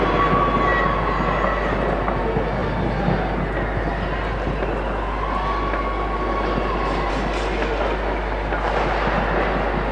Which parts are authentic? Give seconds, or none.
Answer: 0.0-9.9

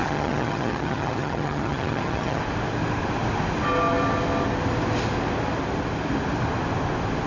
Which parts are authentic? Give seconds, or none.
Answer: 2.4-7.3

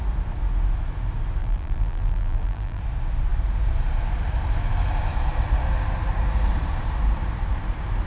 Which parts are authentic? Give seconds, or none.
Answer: 0.0-1.4; 2.8-8.1